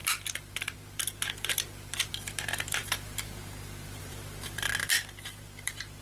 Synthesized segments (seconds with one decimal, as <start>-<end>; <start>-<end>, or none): 0.0-6.0